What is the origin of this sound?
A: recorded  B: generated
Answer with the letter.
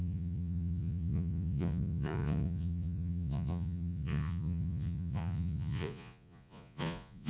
B